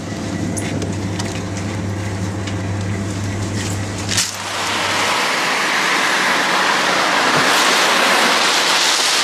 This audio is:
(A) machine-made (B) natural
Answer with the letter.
B